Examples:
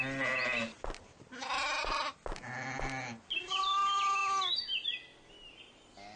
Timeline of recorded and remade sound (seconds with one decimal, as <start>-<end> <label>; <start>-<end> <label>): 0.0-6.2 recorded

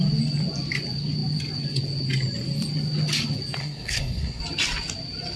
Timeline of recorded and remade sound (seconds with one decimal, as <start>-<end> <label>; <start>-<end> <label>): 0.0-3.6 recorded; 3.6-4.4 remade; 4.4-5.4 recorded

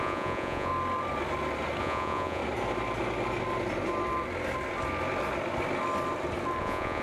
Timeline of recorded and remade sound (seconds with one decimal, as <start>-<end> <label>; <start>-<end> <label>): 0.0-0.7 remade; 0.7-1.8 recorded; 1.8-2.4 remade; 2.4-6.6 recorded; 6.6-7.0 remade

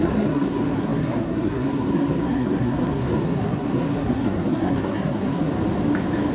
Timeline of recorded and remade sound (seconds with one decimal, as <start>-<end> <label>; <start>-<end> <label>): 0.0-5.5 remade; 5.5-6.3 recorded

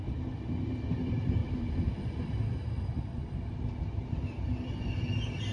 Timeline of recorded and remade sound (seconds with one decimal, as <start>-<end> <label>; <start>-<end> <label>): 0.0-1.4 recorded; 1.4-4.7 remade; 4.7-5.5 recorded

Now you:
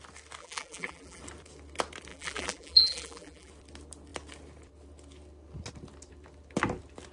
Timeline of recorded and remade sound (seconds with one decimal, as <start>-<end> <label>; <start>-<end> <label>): 0.0-0.4 recorded; 0.4-1.2 remade; 1.2-2.1 recorded; 2.1-3.5 remade; 3.5-7.1 recorded

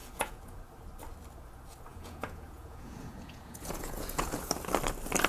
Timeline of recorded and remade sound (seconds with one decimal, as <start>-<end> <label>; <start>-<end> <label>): 0.0-0.6 remade; 0.6-1.9 recorded; 1.9-4.5 remade; 4.5-5.3 recorded

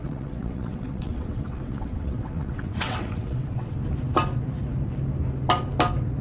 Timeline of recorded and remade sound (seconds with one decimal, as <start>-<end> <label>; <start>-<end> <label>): 0.0-3.7 remade; 3.7-6.2 recorded